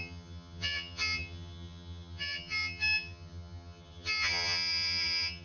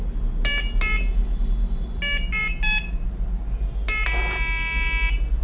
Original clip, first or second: second